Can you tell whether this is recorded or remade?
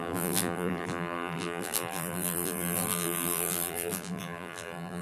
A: remade